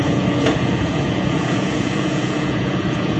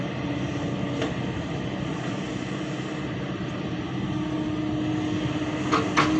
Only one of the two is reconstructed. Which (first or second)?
first